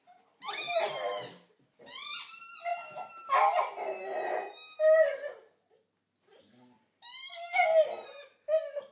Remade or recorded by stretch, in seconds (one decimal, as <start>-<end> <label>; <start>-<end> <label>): 0.0-8.9 recorded